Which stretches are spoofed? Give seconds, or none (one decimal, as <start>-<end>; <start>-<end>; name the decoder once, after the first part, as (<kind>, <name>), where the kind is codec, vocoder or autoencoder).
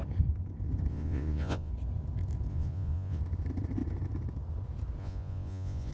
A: 0.9-1.7 (vocoder, Vocos); 2.5-3.2; 5.0-5.9